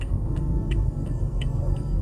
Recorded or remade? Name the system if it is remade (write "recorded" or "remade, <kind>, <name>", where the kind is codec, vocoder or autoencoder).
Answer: remade, codec, SNAC